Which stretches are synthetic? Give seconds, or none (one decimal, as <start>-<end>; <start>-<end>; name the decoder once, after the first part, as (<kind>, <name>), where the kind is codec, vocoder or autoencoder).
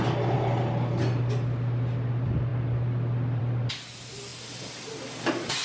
none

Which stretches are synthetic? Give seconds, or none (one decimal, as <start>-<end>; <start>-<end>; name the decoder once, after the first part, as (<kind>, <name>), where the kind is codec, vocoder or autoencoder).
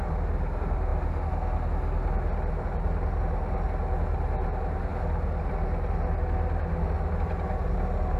none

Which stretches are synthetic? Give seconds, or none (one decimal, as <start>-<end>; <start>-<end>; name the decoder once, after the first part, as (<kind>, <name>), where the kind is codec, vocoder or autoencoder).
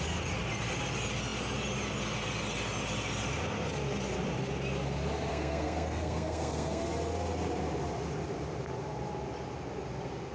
5.3-6.8 (codec, SNAC)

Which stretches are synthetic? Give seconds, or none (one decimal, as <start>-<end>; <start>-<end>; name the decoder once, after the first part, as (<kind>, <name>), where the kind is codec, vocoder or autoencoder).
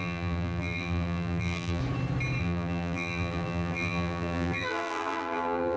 0.0-1.8 (vocoder, BigVGAN v2); 2.4-5.8